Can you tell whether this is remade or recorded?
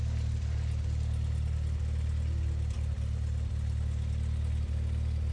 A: recorded